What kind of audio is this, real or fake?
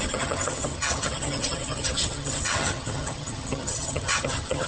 fake